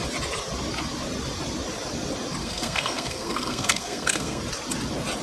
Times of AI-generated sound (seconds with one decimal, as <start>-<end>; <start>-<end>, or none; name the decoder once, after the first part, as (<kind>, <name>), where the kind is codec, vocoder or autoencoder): 2.4-4.4 (codec, SNAC)